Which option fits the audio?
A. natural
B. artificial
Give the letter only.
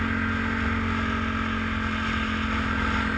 A